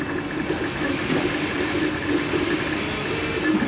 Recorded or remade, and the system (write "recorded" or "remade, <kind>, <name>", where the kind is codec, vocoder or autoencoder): recorded